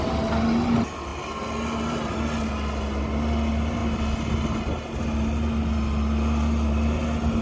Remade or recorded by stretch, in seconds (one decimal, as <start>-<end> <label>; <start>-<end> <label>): 0.0-7.4 recorded